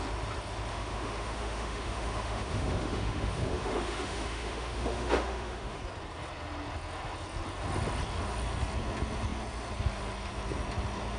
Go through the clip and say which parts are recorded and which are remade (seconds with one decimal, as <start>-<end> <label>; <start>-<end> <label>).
0.0-0.7 recorded; 0.7-5.8 remade; 5.8-11.2 recorded